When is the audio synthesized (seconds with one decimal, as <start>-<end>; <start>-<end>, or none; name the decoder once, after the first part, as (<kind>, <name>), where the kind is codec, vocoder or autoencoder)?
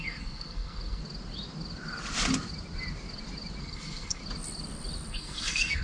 0.0-1.0 (codec, SNAC); 3.6-4.2; 5.1-5.8